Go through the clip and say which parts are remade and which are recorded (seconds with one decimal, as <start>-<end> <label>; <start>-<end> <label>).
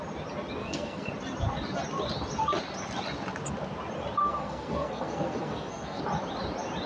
0.0-0.6 recorded; 0.6-1.1 remade; 1.1-4.2 recorded; 4.2-6.0 remade; 6.0-6.9 recorded